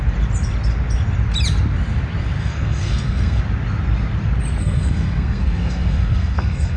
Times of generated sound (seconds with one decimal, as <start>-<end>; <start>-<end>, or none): 2.4-3.4; 4.6-6.8